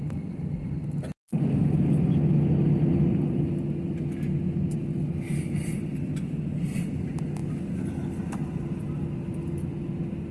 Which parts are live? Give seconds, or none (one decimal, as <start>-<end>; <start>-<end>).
0.0-10.3